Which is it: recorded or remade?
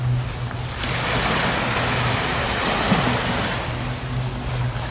recorded